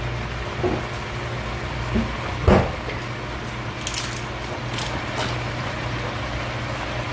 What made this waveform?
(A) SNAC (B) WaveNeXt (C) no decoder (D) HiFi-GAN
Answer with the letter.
C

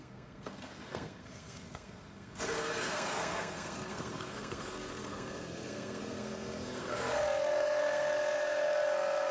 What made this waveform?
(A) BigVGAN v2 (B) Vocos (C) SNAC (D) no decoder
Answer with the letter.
C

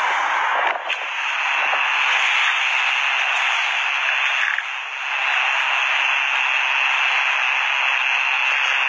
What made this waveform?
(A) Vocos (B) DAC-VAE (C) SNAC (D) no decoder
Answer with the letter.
D